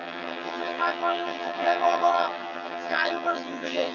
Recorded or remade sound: remade